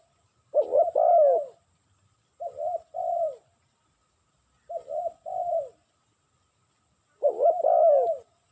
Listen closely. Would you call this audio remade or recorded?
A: recorded